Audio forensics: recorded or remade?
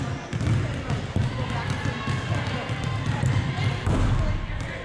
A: recorded